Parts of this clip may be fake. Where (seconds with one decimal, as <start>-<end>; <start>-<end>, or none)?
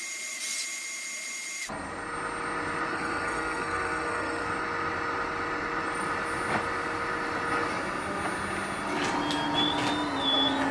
2.9-4.5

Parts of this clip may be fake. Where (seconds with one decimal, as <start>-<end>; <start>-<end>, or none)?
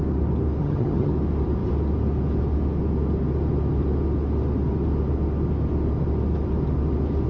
0.6-1.1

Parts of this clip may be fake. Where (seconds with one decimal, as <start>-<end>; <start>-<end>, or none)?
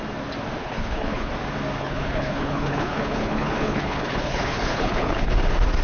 0.6-1.3; 1.8-5.3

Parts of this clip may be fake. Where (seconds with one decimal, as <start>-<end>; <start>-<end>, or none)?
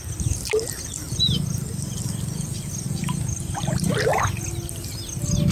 3.0-4.1